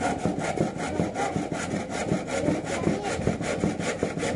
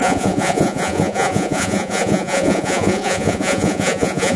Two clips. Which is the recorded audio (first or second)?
first